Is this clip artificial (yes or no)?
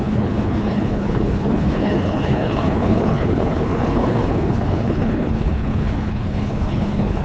yes